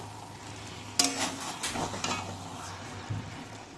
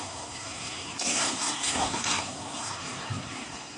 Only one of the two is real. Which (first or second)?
first